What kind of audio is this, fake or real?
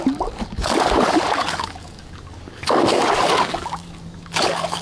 fake